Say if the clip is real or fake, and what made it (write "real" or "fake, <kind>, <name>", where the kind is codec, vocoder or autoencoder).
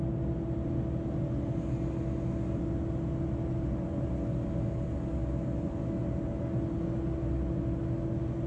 real